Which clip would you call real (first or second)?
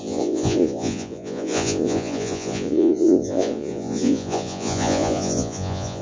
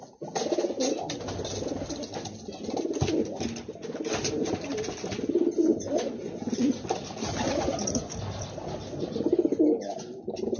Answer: second